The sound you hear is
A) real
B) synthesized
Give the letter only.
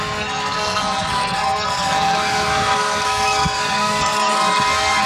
B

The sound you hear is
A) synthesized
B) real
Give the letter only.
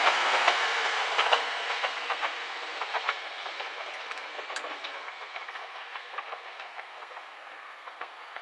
A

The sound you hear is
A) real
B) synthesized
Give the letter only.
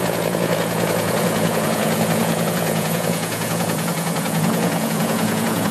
B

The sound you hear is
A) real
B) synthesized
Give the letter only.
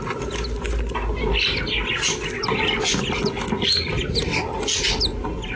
A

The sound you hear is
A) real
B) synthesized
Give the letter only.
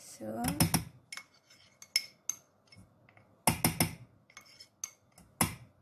A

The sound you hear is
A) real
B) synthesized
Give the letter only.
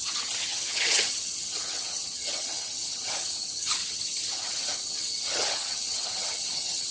B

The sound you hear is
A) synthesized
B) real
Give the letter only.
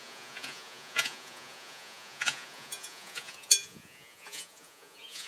A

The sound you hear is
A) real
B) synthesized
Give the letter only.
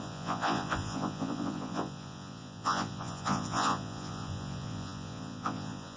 B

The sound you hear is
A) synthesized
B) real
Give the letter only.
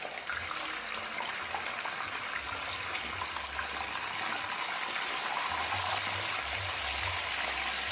B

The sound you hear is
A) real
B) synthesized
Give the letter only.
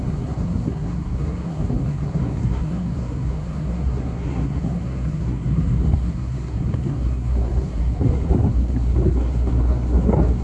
B